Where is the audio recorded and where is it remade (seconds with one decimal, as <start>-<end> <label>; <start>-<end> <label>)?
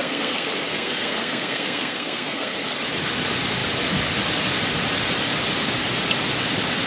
0.0-2.7 remade; 2.7-6.9 recorded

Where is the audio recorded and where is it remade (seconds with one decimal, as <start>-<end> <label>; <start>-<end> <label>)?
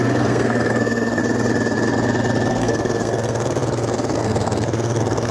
0.0-1.2 remade; 1.2-2.5 recorded; 2.5-5.3 remade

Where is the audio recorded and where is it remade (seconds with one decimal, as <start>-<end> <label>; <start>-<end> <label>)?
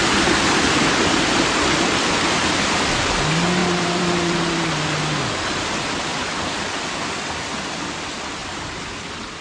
0.0-3.6 recorded; 3.6-4.7 remade; 4.7-8.4 recorded; 8.4-8.9 remade; 8.9-9.4 recorded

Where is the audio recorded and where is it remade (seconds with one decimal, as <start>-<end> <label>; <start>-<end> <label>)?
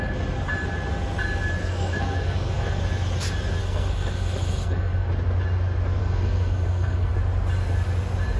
0.0-1.6 recorded; 1.6-2.8 remade; 2.8-3.6 recorded; 3.6-5.1 remade; 5.1-6.0 recorded; 6.0-7.1 remade; 7.1-8.4 recorded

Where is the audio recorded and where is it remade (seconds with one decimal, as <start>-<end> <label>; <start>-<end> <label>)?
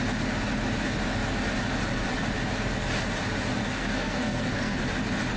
0.0-3.6 recorded; 3.6-4.8 remade; 4.8-5.4 recorded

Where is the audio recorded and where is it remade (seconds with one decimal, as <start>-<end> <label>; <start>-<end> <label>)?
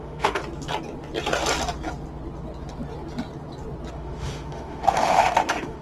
0.0-0.4 remade; 0.4-3.9 recorded; 3.9-5.8 remade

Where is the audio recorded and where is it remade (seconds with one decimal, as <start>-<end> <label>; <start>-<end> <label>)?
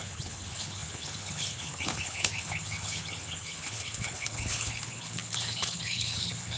0.0-6.6 remade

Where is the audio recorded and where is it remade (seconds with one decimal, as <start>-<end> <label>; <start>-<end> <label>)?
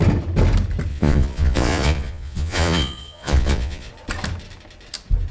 0.0-0.9 recorded; 0.9-3.9 remade; 3.9-5.3 recorded